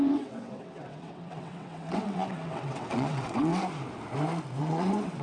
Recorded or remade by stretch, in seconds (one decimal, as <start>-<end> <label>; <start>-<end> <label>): 0.0-3.5 remade; 3.5-4.6 recorded; 4.6-5.2 remade